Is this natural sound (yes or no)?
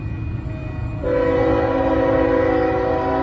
yes